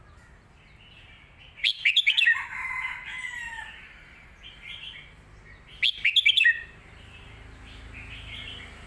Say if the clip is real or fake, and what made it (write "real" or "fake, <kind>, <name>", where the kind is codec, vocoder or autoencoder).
real